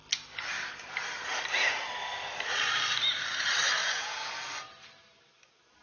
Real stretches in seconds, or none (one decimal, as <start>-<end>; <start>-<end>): 0.0-3.8; 4.3-5.8